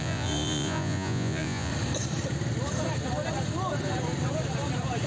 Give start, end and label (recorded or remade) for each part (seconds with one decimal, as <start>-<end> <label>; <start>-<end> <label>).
0.0-1.7 remade; 1.7-5.1 recorded